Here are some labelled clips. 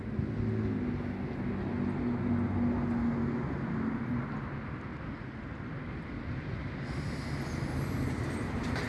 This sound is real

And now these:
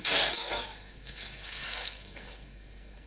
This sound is fake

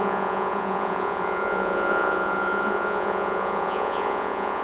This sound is fake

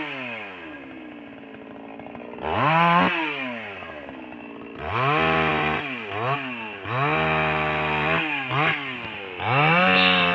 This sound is real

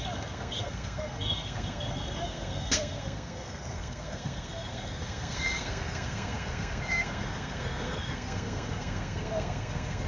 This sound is fake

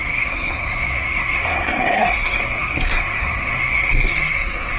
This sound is fake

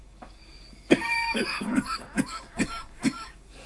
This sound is fake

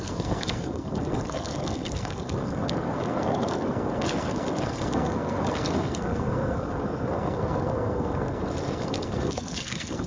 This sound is fake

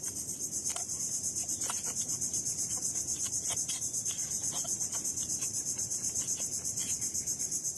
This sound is fake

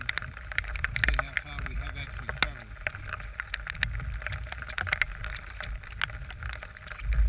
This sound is real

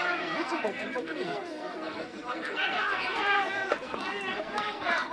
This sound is fake